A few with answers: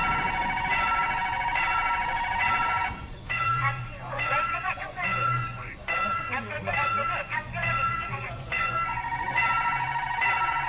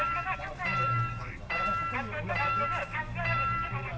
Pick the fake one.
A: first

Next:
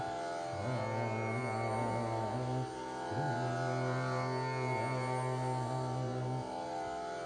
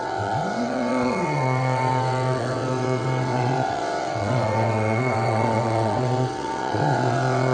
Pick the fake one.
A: second